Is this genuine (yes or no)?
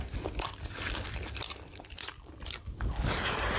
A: yes